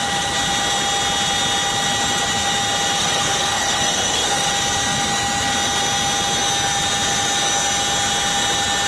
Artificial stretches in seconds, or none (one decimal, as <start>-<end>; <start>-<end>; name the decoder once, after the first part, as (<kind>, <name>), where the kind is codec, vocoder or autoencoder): 3.0-4.5 (codec, SNAC)